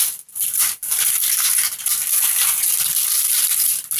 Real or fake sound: real